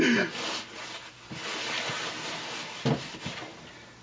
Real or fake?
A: real